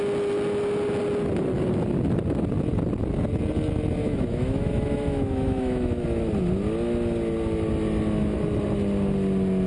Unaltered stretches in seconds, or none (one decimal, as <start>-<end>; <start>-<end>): 0.0-4.0; 6.0-9.7